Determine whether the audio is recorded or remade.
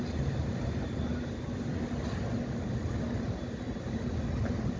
recorded